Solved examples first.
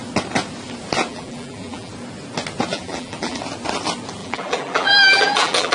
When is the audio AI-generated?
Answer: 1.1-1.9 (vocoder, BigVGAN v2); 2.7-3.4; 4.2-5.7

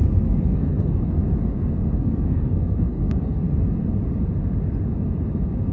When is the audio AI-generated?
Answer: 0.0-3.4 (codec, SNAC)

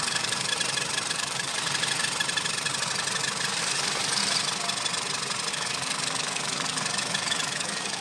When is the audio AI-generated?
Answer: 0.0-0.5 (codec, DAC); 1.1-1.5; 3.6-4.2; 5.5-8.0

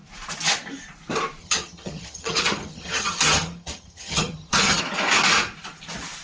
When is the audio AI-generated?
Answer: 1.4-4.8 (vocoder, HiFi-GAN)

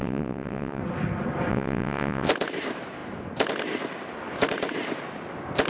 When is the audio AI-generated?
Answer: 0.0-0.8 (vocoder, WaveNeXt); 1.5-2.3

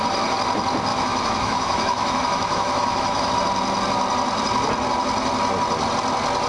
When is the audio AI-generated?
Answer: 0.9-3.3 (autoencoder, DAC-VAE)

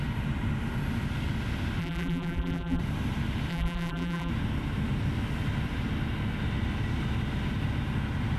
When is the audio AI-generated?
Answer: 1.8-2.8 (vocoder, BigVGAN v2); 3.5-4.3

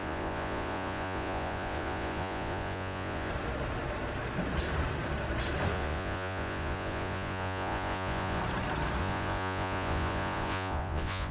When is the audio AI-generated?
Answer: 0.0-3.3 (vocoder, Vocos); 5.7-8.4; 9.0-11.3